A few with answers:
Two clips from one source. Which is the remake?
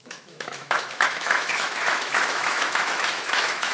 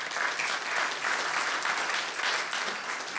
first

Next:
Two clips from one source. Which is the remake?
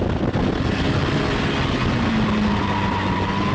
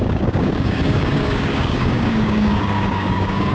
second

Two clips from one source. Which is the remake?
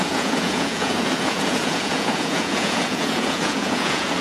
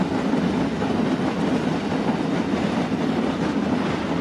first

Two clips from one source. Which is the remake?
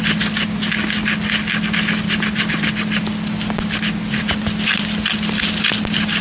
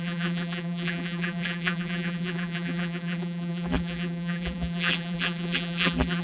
second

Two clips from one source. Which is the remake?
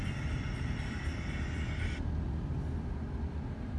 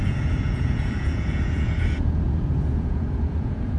second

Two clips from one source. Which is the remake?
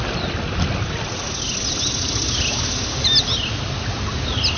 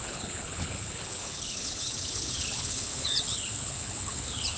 second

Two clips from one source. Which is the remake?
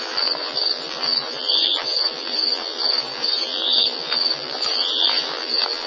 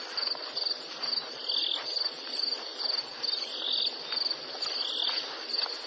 first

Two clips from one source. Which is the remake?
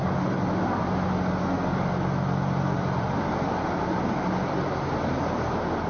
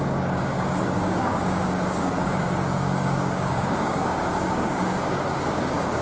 second